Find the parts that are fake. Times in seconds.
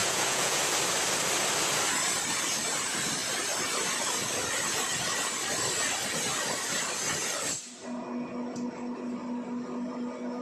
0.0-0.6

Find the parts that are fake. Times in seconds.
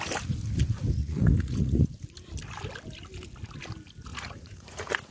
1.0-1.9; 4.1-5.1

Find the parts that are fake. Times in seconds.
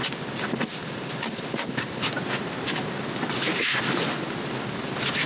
none